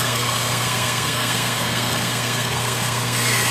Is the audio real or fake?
fake